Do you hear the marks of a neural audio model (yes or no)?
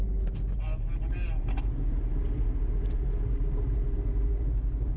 no